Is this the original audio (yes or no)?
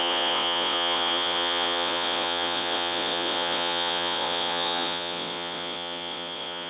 no